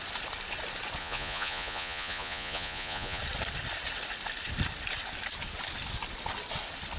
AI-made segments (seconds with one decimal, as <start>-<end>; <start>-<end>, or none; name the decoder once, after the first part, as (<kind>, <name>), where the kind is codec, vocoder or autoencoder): 1.0-3.2 (vocoder, Vocos)